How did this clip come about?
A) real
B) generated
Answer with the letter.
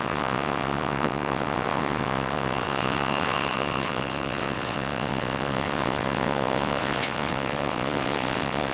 B